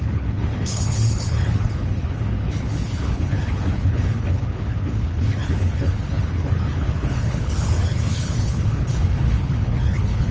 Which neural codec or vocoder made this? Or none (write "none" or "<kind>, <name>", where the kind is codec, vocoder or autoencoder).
codec, HILCodec